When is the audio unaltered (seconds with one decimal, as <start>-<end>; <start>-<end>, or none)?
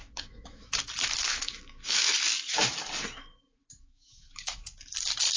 0.9-1.3; 2.1-3.6; 4.6-5.4